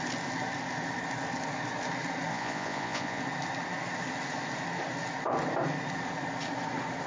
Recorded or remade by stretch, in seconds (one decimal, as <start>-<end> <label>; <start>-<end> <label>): 0.0-2.3 recorded; 2.3-3.2 remade; 3.2-7.1 recorded